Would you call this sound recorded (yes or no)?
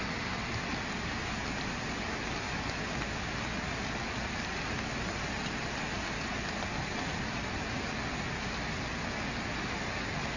yes